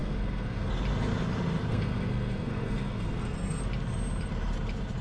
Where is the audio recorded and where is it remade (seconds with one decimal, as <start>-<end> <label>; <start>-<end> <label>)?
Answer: 0.0-0.7 remade; 0.7-1.7 recorded; 1.7-3.6 remade; 3.6-5.0 recorded